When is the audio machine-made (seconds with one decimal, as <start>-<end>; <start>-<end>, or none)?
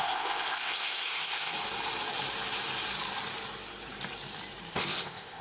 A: 0.0-1.5; 4.7-5.4